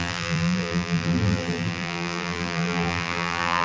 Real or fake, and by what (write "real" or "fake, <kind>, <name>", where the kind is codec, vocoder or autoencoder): fake, vocoder, BigVGAN v2